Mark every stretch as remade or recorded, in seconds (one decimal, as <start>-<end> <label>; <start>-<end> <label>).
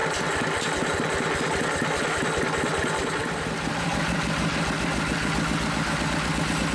0.0-6.7 recorded